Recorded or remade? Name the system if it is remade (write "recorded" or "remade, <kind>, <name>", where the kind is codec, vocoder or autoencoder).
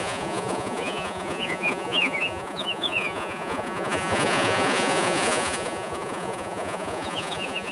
remade, vocoder, Vocos